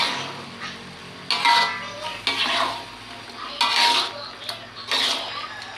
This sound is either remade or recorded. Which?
recorded